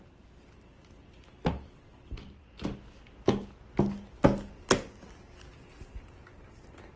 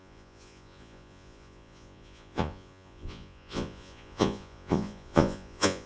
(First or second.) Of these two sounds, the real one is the first